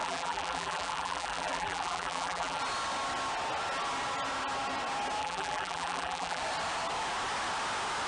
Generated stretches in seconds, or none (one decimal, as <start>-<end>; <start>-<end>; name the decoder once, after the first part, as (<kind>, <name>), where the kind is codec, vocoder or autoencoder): 0.0-2.6 (vocoder, BigVGAN v2); 5.2-6.4